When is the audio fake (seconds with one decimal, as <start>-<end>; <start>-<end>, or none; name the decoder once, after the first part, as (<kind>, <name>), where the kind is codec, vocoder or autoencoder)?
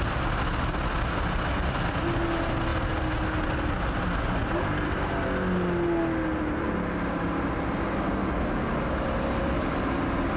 none